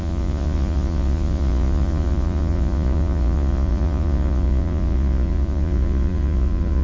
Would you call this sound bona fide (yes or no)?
no